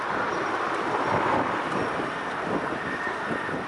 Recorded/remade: recorded